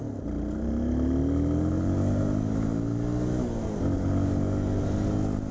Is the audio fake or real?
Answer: real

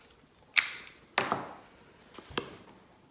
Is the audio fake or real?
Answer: real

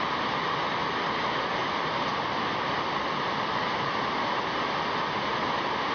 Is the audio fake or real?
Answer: real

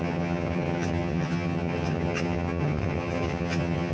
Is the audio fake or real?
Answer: fake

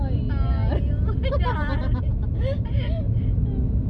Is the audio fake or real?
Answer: real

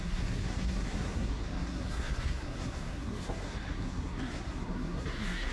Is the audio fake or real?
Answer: fake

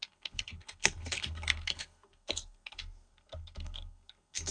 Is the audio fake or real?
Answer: fake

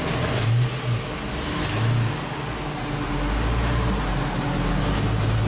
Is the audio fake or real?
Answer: real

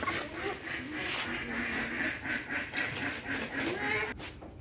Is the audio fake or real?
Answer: real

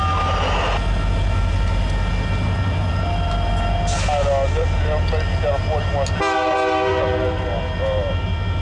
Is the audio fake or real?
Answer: real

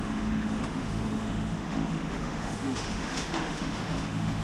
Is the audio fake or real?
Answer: fake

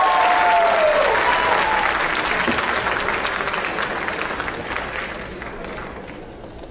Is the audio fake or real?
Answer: real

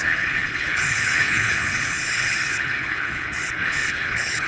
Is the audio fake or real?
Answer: fake